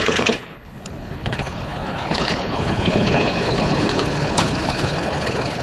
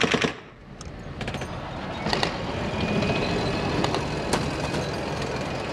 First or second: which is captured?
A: second